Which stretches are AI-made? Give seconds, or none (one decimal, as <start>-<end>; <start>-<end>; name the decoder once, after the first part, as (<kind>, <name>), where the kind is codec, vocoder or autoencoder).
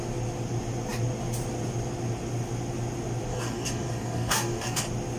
3.3-4.8 (codec, DAC)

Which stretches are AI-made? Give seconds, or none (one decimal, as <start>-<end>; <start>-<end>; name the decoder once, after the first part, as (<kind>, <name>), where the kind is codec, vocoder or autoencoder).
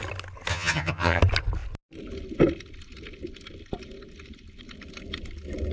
0.5-1.2 (vocoder, HiFi-GAN)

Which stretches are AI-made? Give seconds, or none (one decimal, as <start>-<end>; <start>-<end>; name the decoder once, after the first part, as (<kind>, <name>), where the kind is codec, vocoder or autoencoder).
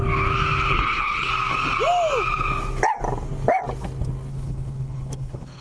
0.7-1.3 (codec, HILCodec); 4.3-5.6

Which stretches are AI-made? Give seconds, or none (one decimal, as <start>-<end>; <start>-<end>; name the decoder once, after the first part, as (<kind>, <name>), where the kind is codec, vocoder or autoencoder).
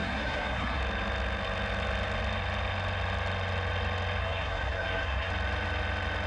0.0-0.8 (codec, SNAC); 4.2-5.3